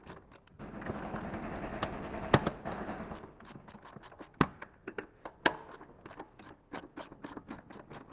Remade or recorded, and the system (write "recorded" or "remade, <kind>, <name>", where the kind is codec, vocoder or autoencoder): recorded